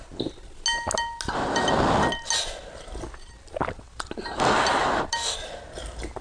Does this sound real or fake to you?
real